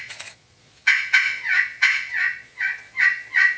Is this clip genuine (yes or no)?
no